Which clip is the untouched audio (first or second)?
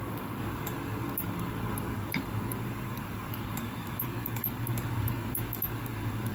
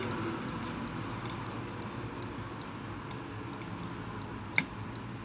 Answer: second